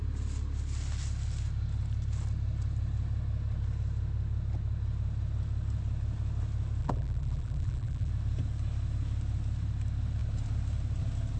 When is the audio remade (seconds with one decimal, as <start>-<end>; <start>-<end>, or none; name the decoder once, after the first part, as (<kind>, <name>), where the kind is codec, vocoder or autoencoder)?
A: 6.8-8.1 (vocoder, BigVGAN v2)

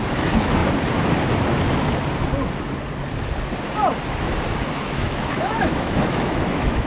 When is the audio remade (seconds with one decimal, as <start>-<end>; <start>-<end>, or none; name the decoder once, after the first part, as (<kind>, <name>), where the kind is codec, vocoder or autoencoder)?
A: 0.0-0.6 (autoencoder, DAC-VAE); 4.7-6.9

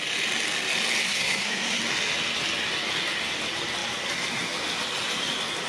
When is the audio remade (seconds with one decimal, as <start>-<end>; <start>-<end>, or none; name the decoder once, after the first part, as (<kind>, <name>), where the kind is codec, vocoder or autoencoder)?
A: 1.0-1.8 (codec, SNAC)

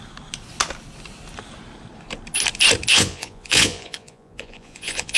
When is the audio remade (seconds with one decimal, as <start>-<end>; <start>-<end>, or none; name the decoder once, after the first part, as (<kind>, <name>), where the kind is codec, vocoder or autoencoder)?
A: 2.9-5.2 (vocoder, Vocos)

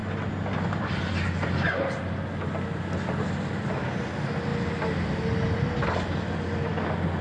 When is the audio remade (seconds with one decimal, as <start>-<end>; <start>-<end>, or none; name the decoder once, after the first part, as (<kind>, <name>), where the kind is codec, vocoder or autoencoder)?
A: none

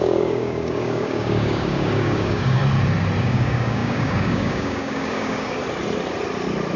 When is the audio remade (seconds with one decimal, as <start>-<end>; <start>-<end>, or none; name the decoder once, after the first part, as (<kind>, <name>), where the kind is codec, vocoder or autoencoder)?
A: 0.0-2.6 (codec, DAC); 3.2-5.6

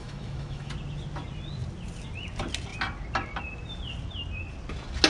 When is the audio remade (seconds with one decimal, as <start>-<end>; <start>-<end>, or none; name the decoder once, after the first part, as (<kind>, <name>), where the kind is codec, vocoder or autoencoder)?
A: 0.0-0.7 (autoencoder, DAC-VAE)

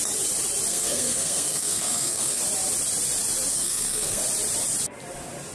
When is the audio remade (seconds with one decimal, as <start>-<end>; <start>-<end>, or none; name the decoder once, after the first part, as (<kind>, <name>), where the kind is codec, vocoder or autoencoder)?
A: 0.7-2.4 (codec, SNAC); 3.5-4.2